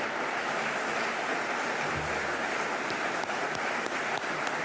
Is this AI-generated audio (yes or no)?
no